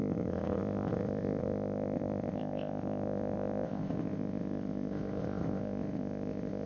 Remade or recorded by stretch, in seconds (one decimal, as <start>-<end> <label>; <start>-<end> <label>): 0.0-6.7 remade